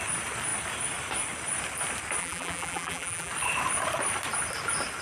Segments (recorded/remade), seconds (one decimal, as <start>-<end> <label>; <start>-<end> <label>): 0.0-2.2 recorded; 2.2-3.3 remade; 3.3-5.0 recorded